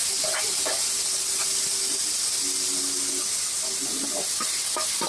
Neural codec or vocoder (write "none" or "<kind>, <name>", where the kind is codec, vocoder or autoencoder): none